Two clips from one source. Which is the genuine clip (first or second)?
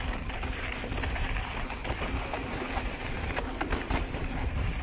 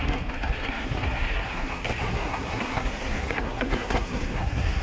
first